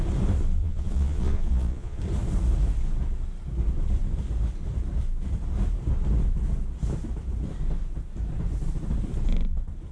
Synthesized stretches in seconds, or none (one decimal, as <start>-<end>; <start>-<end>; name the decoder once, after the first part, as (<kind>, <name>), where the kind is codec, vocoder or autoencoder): 0.6-2.0 (vocoder, Vocos)